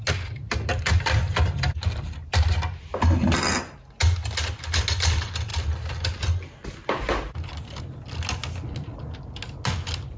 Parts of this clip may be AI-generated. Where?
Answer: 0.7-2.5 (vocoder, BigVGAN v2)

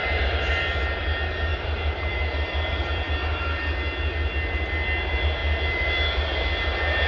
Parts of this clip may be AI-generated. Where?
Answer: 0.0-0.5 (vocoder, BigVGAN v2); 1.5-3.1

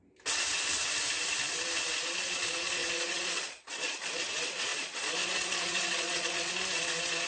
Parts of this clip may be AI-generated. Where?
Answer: 2.8-4.1 (vocoder, Vocos); 4.7-6.5

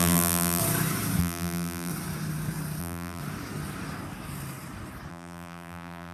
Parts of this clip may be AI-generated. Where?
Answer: 0.0-0.6 (vocoder, BigVGAN v2); 1.2-1.9; 2.8-3.2; 5.1-6.1

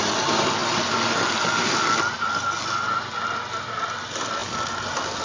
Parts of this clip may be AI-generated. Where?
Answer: none

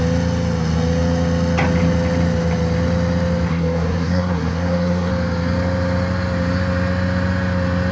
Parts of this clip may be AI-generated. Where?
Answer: 3.5-5.1 (codec, SNAC)